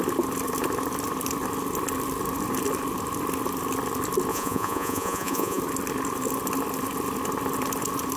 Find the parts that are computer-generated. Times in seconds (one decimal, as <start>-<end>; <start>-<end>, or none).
4.3-5.6

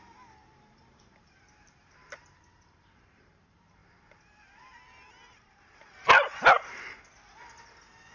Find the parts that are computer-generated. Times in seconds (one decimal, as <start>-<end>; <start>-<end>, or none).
0.0-3.8